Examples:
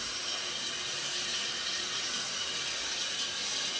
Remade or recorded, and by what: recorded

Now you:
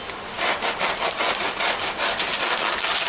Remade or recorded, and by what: recorded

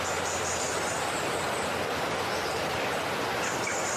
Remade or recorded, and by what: recorded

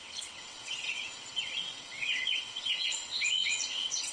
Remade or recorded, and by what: remade, vocoder, WaveNeXt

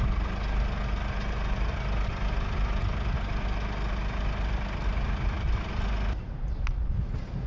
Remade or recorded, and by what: recorded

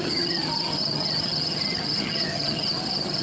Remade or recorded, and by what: remade, vocoder, HiFi-GAN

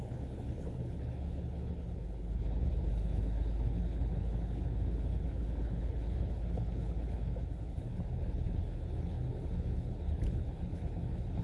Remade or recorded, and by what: remade, codec, HILCodec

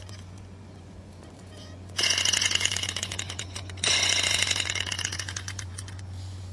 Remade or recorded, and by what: remade, vocoder, Vocos